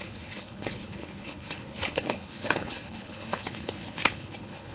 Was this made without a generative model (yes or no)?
no